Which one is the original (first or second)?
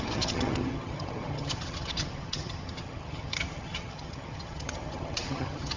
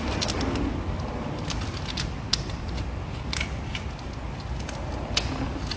second